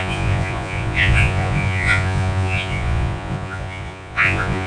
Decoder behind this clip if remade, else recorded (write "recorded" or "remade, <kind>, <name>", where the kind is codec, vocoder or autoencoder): remade, vocoder, Vocos